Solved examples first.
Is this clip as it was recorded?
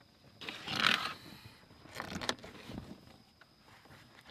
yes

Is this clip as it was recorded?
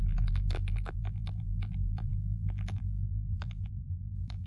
no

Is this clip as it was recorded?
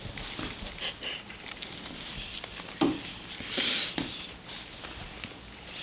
yes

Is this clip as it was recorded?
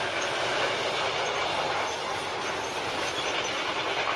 yes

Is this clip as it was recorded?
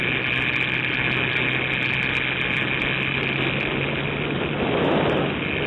yes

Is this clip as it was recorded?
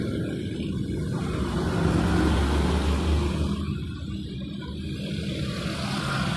yes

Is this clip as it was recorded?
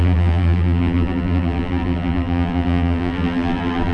no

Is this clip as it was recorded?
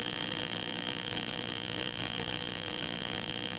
no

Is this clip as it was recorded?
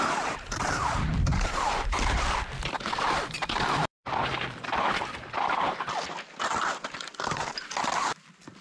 no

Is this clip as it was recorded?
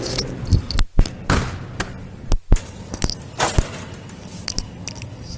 yes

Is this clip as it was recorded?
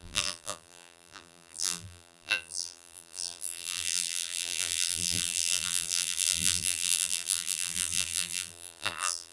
no